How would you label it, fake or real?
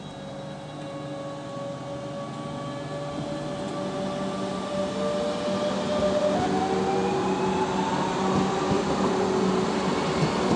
real